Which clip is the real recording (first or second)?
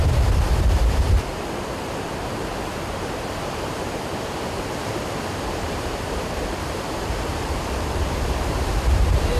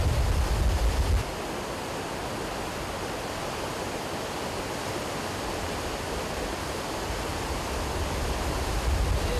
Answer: second